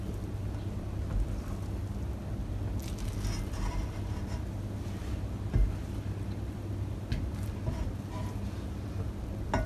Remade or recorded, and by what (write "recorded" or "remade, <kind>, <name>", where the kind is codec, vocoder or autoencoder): recorded